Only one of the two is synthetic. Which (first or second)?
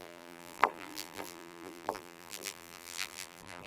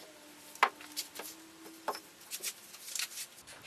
first